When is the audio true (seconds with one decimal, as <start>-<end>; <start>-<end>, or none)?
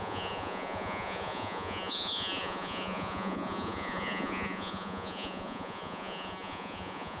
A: none